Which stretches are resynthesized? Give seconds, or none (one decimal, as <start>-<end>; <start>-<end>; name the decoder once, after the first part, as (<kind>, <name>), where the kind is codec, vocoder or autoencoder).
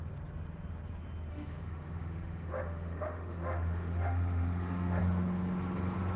1.3-5.0 (autoencoder, DAC-VAE)